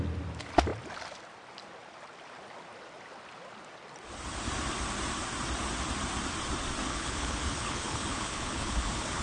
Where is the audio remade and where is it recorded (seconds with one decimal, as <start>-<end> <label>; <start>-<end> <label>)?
0.0-6.9 recorded; 6.9-9.2 remade